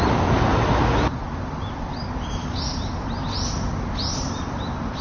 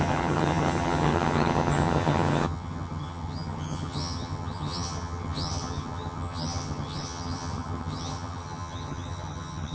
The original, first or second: first